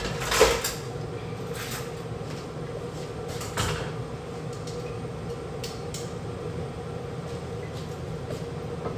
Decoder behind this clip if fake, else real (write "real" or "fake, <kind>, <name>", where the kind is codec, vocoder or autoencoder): real